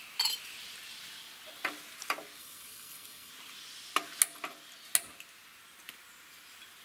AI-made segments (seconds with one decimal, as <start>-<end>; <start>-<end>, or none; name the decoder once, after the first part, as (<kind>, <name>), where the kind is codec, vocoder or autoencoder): 2.4-3.3 (codec, SNAC)